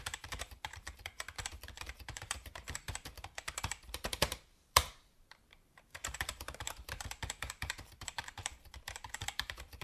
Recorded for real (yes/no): no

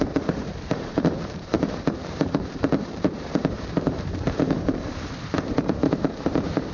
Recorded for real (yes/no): no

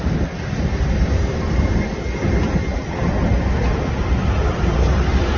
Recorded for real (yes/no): yes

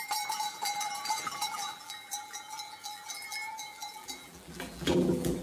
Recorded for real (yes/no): no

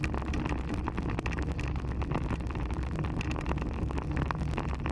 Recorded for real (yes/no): yes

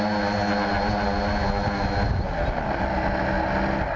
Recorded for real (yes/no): yes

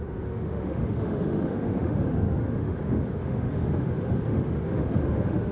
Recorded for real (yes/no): no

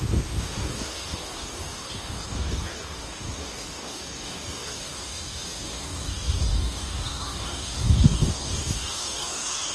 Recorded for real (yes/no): no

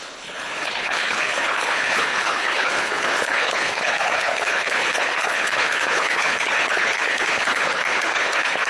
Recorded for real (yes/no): no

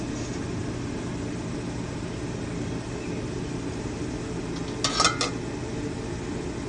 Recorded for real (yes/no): yes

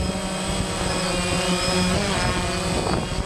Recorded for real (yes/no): yes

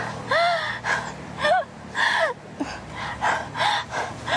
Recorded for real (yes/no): yes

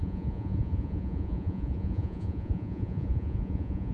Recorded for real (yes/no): no